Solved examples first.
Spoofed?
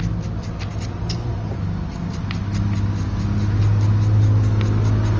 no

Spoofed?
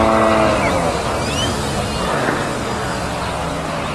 no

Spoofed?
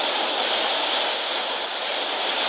no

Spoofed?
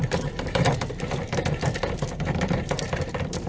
yes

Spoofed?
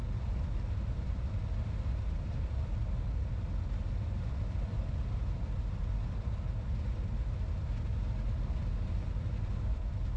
no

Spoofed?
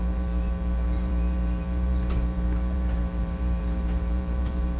yes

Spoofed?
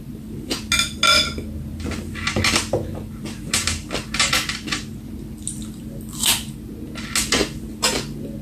no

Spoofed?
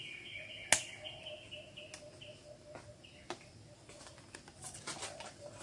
no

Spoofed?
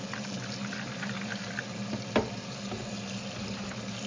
no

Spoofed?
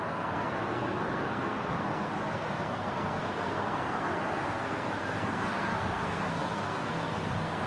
yes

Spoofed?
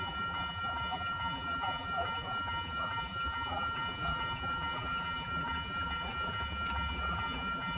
yes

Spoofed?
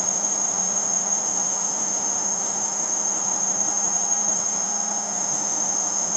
yes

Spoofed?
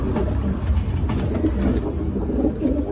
no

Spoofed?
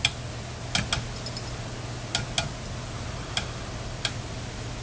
no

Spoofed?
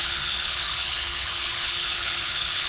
yes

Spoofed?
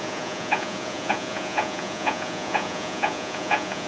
yes